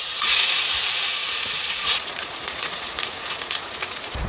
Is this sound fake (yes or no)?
yes